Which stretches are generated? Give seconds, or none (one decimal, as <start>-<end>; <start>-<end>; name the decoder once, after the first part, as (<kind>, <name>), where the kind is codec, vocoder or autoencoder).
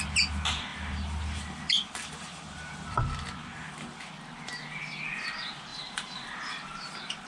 0.7-3.0 (vocoder, BigVGAN v2); 3.5-4.1; 5.7-6.7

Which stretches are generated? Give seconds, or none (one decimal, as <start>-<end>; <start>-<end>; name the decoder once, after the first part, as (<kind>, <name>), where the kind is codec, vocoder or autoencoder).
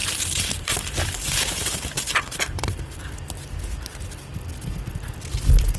0.0-3.1 (vocoder, BigVGAN v2)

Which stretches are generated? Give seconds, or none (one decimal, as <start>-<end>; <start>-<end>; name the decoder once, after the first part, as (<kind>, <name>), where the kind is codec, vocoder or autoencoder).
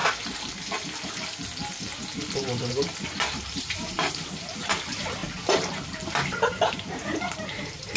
2.7-5.2 (vocoder, BigVGAN v2); 6.3-8.0